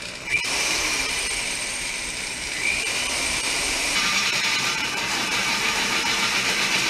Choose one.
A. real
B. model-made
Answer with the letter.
B